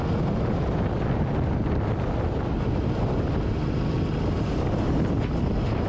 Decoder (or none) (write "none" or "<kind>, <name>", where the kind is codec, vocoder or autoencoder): none